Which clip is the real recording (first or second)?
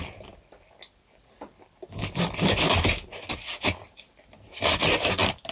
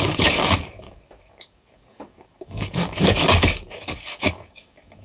first